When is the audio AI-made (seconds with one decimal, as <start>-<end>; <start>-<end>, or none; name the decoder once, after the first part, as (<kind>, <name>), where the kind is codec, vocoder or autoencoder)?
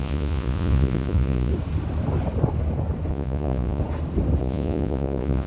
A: 0.0-1.5 (vocoder, Vocos); 3.1-3.8; 4.4-5.5